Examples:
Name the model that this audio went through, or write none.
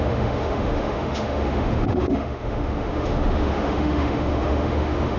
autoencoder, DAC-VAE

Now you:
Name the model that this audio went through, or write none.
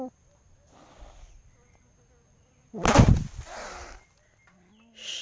none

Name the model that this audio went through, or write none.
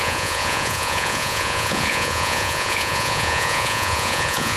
vocoder, Vocos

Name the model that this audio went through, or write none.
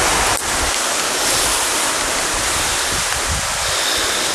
none